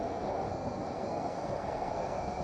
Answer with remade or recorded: remade